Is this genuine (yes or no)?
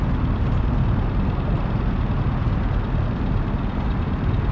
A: yes